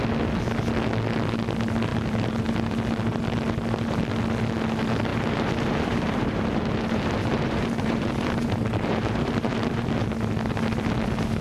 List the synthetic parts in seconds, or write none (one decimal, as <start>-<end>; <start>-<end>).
1.9-2.5; 5.1-10.3